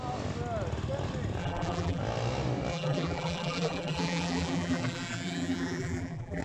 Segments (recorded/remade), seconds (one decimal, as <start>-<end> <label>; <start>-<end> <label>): 0.0-1.4 recorded; 1.4-2.0 remade; 2.0-2.7 recorded; 2.7-6.4 remade